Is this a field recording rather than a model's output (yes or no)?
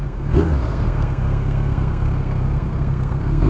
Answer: no